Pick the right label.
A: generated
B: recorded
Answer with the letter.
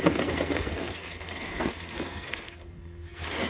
A